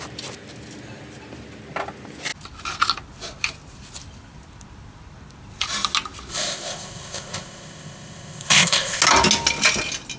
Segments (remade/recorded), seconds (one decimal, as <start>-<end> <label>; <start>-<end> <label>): 0.0-6.3 recorded; 6.3-9.0 remade; 9.0-10.2 recorded